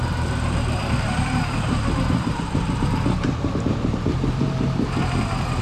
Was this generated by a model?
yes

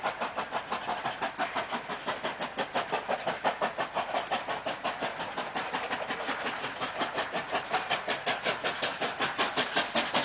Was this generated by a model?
no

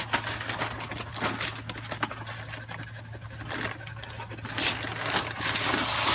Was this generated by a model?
no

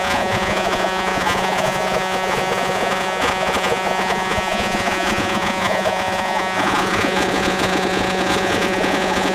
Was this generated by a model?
yes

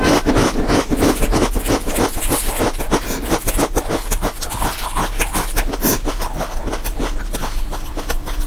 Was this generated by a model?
no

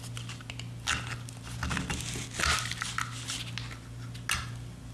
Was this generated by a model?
no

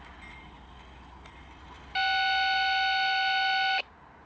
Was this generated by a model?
no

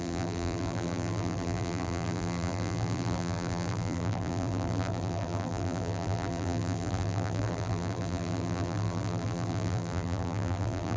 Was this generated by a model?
yes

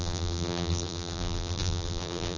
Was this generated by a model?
yes